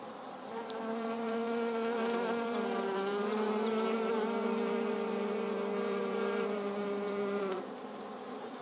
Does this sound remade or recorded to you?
remade